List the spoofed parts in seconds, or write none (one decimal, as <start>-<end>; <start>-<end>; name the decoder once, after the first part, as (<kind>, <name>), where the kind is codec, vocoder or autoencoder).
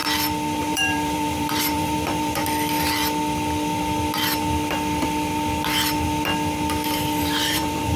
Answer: 0.6-2.4 (vocoder, BigVGAN v2); 7.2-8.0